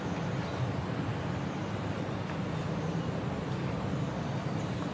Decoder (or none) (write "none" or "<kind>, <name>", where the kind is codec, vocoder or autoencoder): none